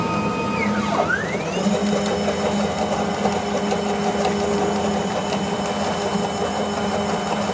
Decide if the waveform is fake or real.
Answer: real